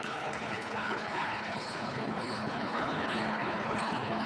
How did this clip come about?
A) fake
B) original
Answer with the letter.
A